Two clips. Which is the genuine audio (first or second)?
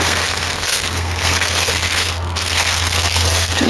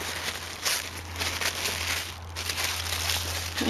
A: second